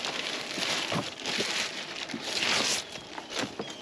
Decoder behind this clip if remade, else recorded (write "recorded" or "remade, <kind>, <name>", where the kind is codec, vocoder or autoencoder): remade, vocoder, BigVGAN v2